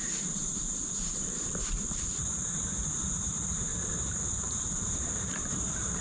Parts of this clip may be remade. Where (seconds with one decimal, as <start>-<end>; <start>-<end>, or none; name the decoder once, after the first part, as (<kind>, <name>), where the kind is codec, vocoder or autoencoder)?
0.0-2.2 (vocoder, BigVGAN v2); 2.9-3.7; 4.4-6.0